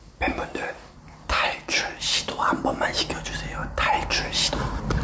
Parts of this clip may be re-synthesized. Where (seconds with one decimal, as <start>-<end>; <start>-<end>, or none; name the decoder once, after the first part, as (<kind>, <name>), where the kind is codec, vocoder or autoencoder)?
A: none